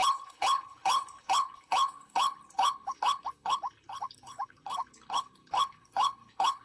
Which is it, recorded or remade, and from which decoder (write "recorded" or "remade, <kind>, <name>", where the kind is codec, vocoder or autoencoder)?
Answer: remade, codec, HILCodec